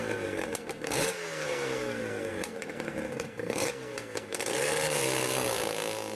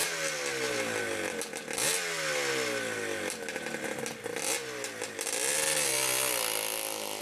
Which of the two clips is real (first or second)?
second